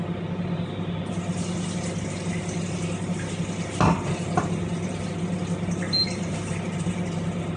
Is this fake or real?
real